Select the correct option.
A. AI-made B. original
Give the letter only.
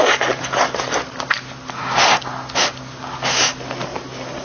B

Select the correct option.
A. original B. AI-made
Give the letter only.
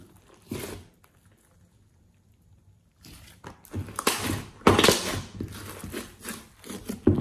A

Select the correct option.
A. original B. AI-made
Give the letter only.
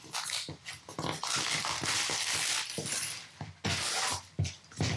A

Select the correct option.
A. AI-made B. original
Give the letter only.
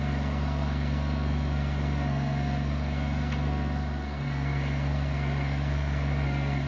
A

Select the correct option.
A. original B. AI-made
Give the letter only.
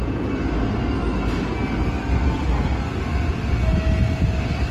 A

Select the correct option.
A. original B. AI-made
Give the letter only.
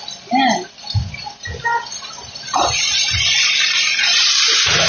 A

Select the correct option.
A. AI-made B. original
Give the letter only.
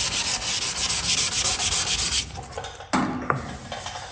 B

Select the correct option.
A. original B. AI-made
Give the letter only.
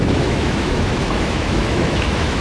B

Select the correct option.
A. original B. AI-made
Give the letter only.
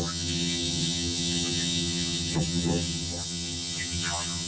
B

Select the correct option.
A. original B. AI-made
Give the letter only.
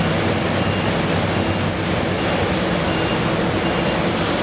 A